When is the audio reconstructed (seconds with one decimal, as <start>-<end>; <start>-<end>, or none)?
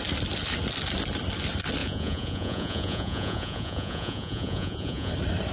1.8-5.1